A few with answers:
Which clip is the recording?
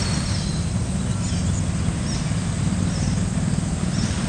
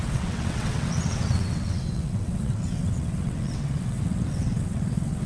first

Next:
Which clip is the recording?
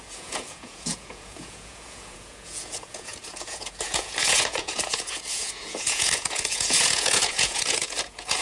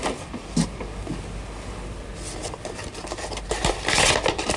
second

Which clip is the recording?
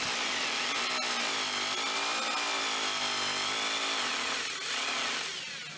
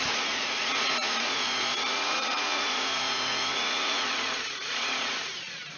first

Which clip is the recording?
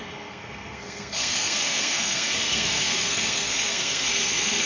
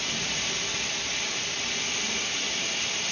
second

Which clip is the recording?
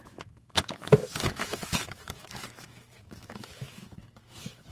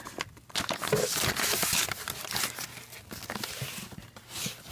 second